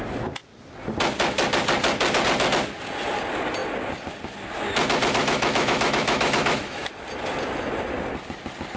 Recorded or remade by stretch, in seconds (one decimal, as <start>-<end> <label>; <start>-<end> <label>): 0.0-5.2 recorded; 5.2-6.9 remade; 6.9-8.8 recorded